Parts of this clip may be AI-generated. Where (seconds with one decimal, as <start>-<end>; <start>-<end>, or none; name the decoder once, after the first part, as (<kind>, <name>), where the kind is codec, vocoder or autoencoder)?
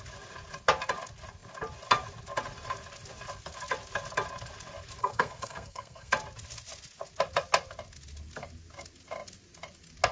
5.0-6.1 (codec, SNAC)